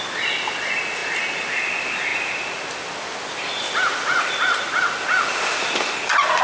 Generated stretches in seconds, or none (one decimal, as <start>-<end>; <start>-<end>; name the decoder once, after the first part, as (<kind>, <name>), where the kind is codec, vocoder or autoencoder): none